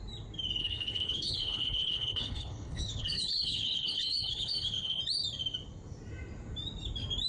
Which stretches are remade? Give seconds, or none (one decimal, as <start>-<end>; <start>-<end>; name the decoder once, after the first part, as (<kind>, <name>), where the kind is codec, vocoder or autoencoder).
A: 0.6-5.0 (codec, HILCodec)